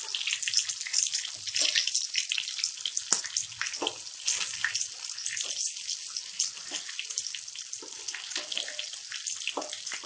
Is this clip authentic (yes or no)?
yes